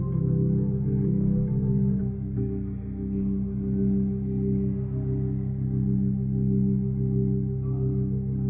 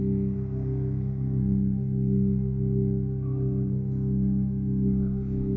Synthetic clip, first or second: second